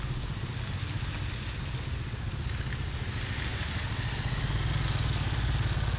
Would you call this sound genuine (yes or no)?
yes